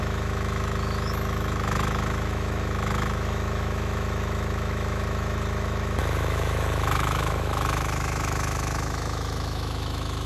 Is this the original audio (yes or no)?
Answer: no